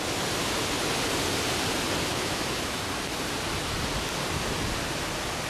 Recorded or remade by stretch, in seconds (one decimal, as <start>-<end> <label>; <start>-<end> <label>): 0.0-2.1 recorded; 2.1-2.8 remade; 2.8-5.5 recorded